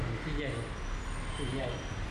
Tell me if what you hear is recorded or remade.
recorded